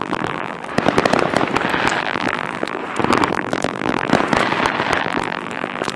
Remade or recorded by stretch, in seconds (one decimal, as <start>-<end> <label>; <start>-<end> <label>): 0.0-0.7 remade; 0.7-2.0 recorded; 2.0-2.8 remade; 2.8-3.3 recorded; 3.3-4.1 remade; 4.1-5.0 recorded; 5.0-6.0 remade